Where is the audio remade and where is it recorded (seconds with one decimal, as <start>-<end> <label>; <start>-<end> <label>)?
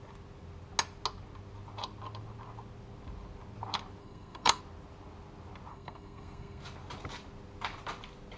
0.0-4.0 recorded; 4.0-4.6 remade; 4.6-5.7 recorded; 5.7-6.6 remade; 6.6-8.4 recorded